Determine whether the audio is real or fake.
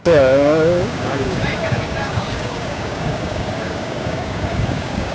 fake